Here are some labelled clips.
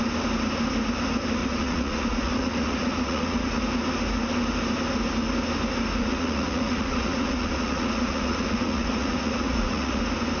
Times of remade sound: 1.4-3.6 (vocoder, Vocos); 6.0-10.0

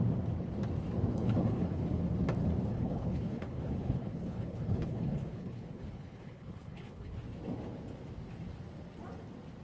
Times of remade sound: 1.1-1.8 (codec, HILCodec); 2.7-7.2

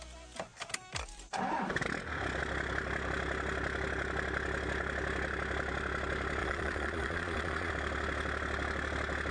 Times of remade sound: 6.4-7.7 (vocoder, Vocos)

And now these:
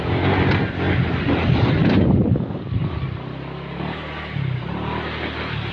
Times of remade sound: none

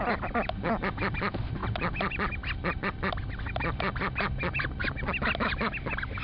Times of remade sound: none

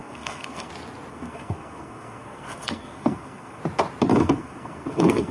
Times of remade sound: 0.0-0.7 (codec, SNAC); 1.1-3.6; 4.1-5.3

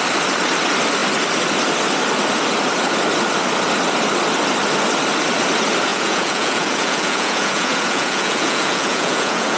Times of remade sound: 5.9-9.6 (vocoder, Vocos)

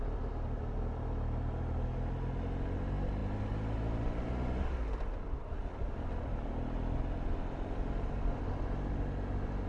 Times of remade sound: none